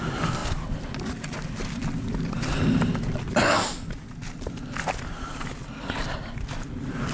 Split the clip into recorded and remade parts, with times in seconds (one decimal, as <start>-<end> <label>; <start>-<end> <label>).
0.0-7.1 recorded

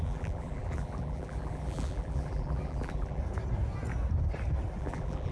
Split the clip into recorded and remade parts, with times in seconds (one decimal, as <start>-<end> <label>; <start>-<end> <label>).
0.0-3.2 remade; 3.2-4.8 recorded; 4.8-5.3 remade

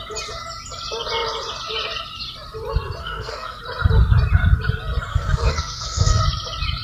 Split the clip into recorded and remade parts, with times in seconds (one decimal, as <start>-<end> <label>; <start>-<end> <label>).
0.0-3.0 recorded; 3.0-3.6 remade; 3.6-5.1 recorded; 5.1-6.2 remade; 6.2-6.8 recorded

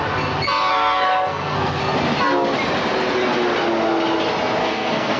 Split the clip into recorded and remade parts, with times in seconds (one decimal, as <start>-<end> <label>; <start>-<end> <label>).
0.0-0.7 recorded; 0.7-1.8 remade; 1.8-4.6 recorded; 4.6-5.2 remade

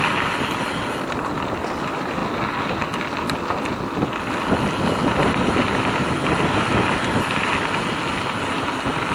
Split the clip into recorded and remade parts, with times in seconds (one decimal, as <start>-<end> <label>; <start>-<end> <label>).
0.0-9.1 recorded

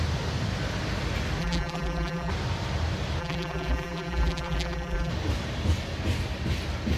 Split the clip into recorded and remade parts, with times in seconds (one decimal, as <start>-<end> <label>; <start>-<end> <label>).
0.0-1.4 recorded; 1.4-2.3 remade; 2.3-3.2 recorded; 3.2-5.1 remade; 5.1-7.0 recorded

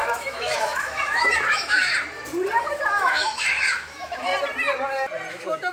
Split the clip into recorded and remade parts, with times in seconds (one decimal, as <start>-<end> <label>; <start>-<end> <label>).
0.0-1.9 remade; 1.9-2.6 recorded; 2.6-4.3 remade; 4.3-5.3 recorded; 5.3-5.7 remade